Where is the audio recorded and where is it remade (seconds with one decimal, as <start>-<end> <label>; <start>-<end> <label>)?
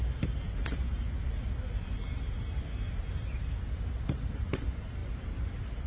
0.0-5.9 recorded